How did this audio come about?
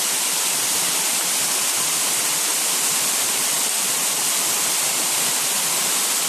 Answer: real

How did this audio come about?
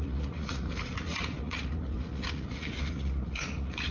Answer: fake